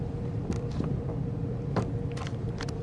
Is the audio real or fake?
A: fake